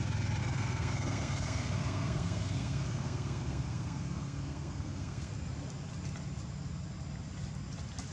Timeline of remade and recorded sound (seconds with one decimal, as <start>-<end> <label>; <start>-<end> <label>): 0.0-0.4 recorded; 0.4-5.3 remade; 5.3-8.1 recorded